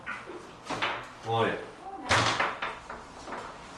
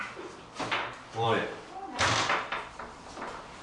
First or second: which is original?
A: first